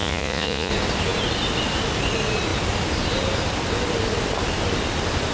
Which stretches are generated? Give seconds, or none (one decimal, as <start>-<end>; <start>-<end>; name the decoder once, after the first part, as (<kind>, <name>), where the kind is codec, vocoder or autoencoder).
0.0-0.7 (vocoder, Vocos)